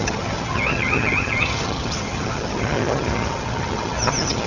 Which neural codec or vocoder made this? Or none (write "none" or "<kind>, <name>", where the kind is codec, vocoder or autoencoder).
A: vocoder, HiFi-GAN